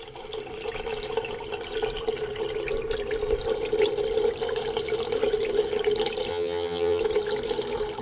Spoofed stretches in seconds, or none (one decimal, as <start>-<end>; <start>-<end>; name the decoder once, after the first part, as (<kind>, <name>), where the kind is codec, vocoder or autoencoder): 6.3-7.0 (vocoder, HiFi-GAN)